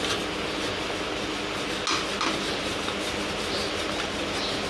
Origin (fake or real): real